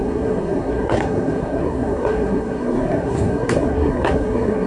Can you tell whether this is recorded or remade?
remade